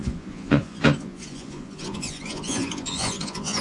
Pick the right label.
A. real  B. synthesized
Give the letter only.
B